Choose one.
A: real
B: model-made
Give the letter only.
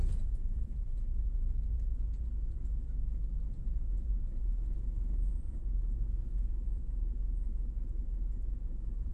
B